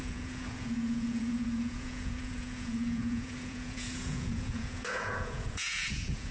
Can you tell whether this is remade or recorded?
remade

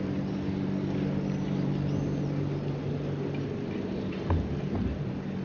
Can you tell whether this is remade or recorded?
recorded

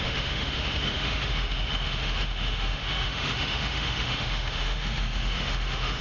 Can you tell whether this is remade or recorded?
remade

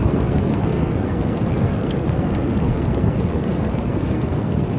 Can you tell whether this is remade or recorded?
remade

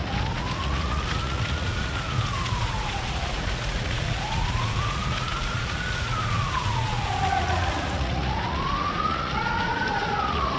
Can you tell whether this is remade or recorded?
remade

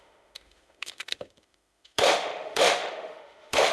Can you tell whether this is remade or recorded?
remade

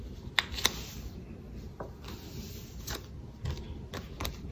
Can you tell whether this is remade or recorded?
recorded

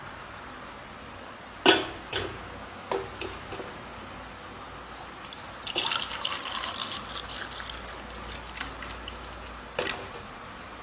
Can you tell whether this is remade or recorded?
recorded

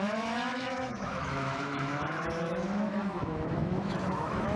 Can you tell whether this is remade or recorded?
remade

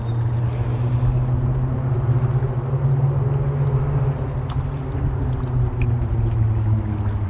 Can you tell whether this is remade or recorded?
recorded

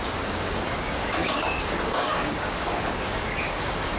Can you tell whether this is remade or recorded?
remade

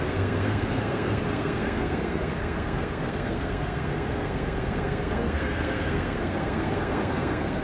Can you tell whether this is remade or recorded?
remade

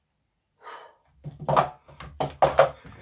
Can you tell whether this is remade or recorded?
recorded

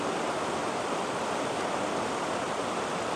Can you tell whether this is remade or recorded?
recorded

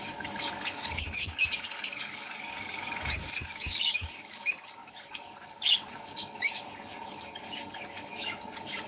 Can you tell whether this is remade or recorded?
remade